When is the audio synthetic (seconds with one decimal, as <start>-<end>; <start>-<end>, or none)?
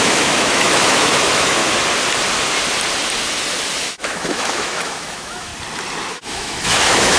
0.0-1.6; 3.8-5.5; 6.1-7.2